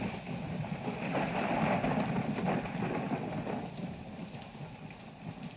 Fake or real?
real